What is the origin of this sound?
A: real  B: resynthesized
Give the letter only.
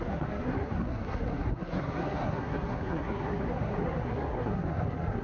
B